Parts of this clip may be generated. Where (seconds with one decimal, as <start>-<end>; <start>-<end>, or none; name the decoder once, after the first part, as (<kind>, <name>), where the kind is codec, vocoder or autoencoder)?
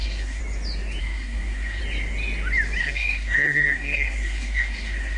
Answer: 0.0-0.4 (codec, SNAC); 1.0-1.8; 2.8-5.2